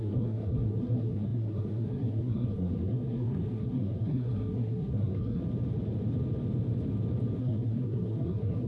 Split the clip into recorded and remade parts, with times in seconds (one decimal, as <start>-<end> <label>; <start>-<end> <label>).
0.0-5.4 remade; 5.4-7.4 recorded; 7.4-8.7 remade